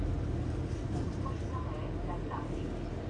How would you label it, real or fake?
real